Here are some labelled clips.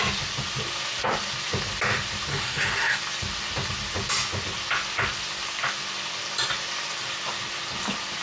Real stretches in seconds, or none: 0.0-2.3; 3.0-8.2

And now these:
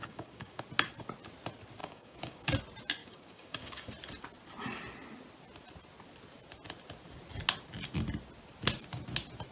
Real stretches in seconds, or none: 0.6-1.8; 2.4-3.0; 3.8-9.5

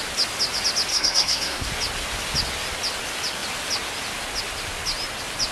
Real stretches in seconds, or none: 0.0-0.9; 1.7-5.5

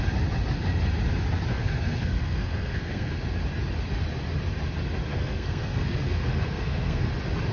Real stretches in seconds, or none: 0.0-1.5; 3.1-5.1; 7.1-7.5

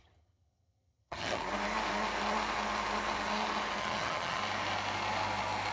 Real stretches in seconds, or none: 1.4-3.8; 4.4-5.7

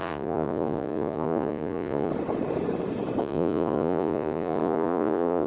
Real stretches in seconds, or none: 2.1-3.2